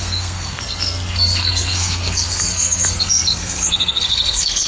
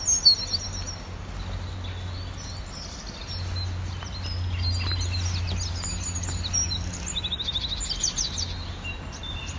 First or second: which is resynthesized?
first